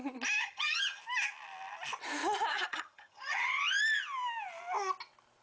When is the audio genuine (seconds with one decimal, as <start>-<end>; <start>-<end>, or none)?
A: 0.0-0.4; 1.0-2.5; 3.6-5.4